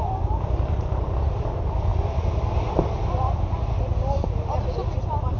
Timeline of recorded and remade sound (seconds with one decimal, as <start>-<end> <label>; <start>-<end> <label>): 0.0-1.9 recorded; 1.9-5.4 remade